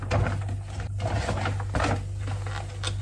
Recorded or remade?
recorded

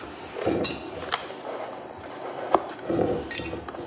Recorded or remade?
recorded